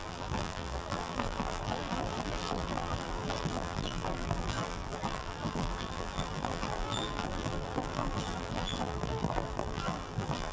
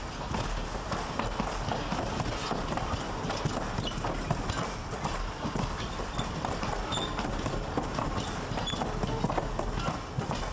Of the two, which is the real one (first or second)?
second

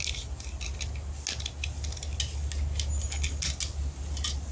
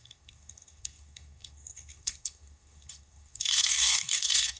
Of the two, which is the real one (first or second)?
first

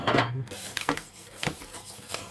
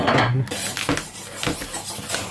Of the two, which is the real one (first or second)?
second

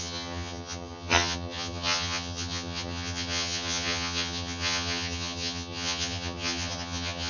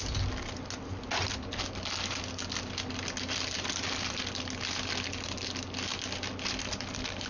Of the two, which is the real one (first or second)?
second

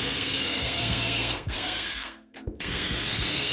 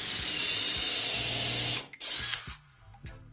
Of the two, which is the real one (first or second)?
second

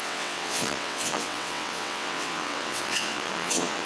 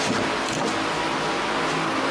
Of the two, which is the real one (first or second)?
second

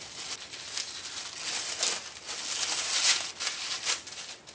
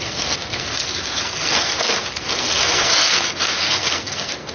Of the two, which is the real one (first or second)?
first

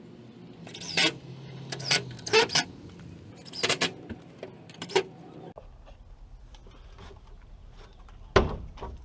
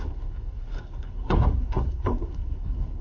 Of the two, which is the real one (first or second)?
first